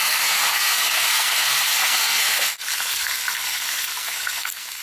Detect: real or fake fake